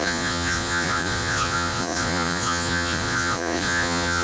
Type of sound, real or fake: fake